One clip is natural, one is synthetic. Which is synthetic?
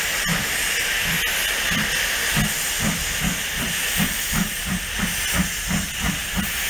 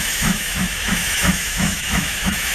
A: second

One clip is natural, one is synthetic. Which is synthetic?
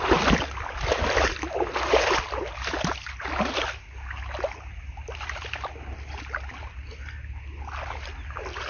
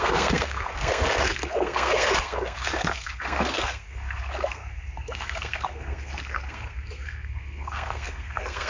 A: second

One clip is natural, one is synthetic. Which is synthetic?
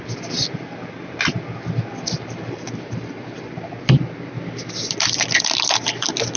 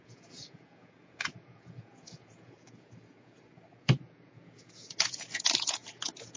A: second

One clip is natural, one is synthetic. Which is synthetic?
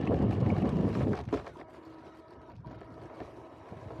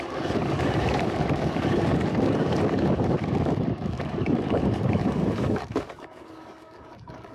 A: second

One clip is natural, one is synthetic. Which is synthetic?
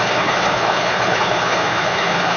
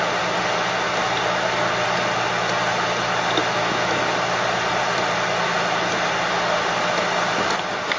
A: first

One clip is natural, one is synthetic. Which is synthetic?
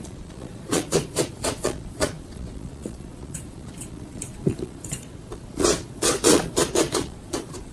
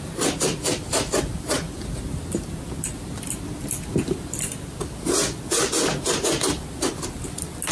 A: first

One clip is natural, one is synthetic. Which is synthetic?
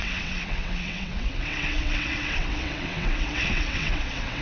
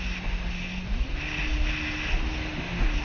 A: first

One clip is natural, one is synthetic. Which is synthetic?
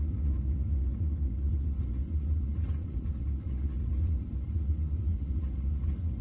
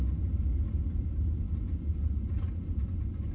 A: first